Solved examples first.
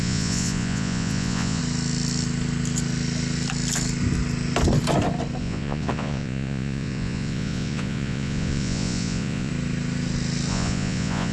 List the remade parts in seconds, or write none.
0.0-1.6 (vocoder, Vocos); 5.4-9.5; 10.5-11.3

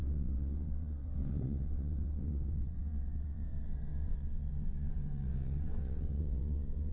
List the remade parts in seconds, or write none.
0.0-6.9 (vocoder, WaveNeXt)

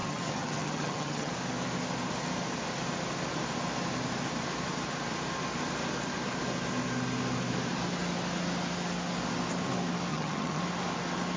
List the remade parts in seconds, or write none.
0.0-1.3 (vocoder, HiFi-GAN); 10.1-10.6

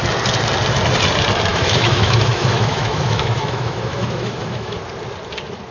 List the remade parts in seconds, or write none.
1.5-4.8 (autoencoder, DAC-VAE)

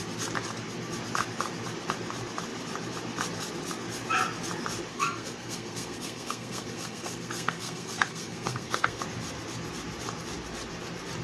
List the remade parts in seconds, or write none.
4.9-9.0 (codec, SNAC)